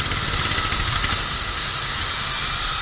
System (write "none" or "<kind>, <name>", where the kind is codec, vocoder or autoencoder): none